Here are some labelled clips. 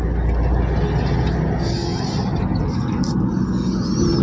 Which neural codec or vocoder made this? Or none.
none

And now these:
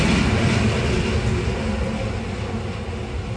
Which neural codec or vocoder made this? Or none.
none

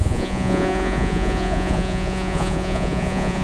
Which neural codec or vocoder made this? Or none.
vocoder, Vocos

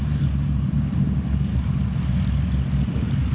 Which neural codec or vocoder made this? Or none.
none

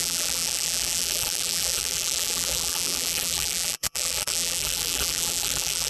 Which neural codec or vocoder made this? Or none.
vocoder, BigVGAN v2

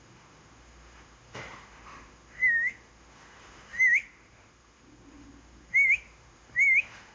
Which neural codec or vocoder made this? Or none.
autoencoder, DAC-VAE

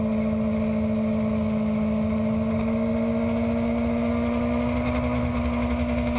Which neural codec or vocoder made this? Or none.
none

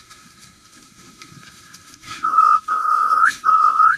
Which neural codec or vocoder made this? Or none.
codec, SNAC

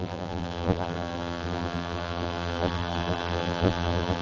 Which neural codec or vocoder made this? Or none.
vocoder, BigVGAN v2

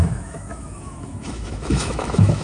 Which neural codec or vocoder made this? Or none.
autoencoder, DAC-VAE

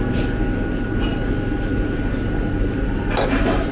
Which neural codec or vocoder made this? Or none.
none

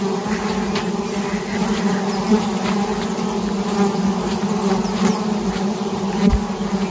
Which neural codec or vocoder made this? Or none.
none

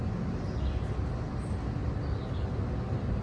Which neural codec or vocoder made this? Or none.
none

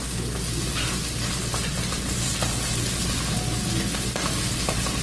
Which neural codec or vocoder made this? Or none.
none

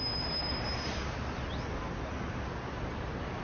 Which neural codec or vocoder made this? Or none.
none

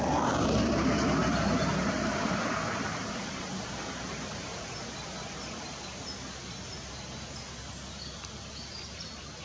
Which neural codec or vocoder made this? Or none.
none